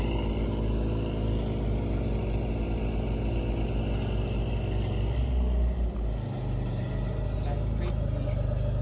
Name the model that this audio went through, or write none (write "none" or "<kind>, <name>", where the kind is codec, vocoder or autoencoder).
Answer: none